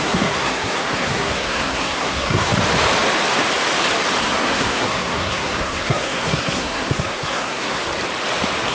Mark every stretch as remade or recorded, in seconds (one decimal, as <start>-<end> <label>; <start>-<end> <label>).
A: 0.0-2.5 remade; 2.5-4.2 recorded; 4.2-7.8 remade; 7.8-8.7 recorded